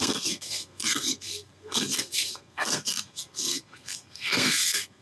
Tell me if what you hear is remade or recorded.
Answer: remade